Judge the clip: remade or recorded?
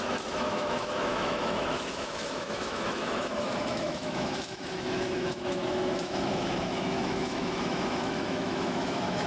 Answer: remade